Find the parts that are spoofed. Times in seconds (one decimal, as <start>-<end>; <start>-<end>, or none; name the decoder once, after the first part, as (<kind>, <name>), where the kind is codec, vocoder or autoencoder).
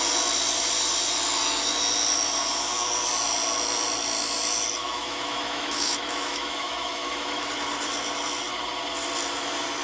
4.8-7.5 (autoencoder, DAC-VAE)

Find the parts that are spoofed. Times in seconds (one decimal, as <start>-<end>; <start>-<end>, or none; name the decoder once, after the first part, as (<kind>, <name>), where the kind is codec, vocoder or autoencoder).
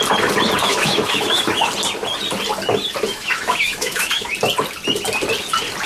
0.6-1.7 (autoencoder, DAC-VAE); 3.1-4.3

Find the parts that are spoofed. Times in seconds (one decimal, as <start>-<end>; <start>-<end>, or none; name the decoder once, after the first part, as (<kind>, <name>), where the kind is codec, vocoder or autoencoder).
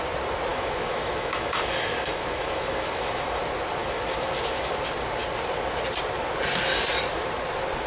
0.5-3.4 (autoencoder, DAC-VAE); 3.8-4.7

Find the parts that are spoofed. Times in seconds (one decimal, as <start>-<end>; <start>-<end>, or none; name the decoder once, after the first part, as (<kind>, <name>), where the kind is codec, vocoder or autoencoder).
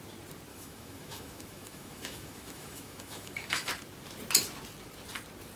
0.5-3.7 (autoencoder, DAC-VAE)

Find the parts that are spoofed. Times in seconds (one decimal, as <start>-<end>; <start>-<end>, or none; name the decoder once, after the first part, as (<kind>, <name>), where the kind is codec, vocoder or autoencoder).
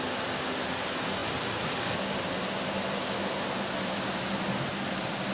none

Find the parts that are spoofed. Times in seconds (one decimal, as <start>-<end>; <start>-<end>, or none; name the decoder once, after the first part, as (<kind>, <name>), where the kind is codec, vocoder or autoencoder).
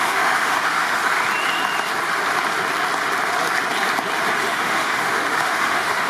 0.0-1.0 (autoencoder, DAC-VAE); 4.4-6.1